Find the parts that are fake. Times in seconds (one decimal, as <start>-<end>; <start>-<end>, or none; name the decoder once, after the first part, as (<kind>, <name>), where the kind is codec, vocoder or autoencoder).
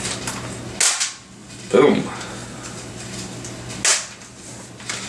2.4-3.0 (vocoder, BigVGAN v2); 3.9-5.1